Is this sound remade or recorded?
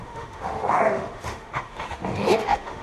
remade